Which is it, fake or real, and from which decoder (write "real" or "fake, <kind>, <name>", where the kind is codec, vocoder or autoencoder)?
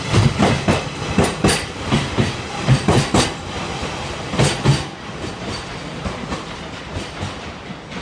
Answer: real